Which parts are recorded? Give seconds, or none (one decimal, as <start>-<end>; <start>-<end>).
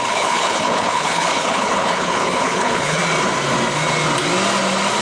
3.0-5.0